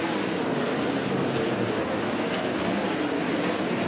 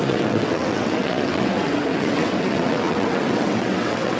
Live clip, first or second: first